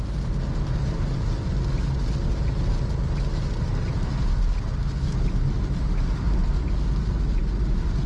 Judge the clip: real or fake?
real